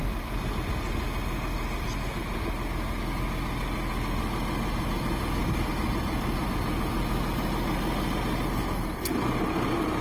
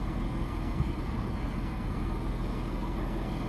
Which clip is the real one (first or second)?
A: first